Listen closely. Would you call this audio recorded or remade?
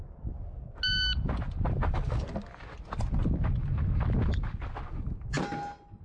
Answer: recorded